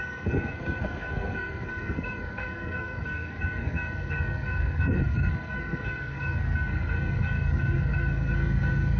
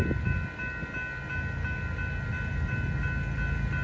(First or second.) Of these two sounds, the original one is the second